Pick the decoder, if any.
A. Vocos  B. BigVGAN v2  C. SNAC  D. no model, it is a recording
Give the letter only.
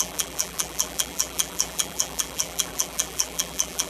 B